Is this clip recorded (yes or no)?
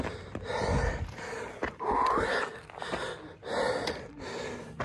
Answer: yes